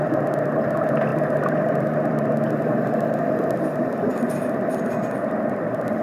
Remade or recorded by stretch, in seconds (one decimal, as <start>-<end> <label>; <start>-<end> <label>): 0.0-6.0 remade